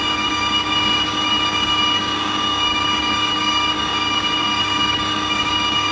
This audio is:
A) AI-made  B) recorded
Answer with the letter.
A